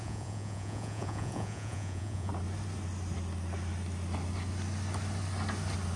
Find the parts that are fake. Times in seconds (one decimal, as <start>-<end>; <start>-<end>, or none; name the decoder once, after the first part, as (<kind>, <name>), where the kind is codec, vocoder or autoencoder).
0.0-2.3 (vocoder, Vocos)